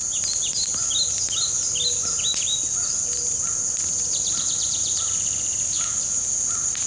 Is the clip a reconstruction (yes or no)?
no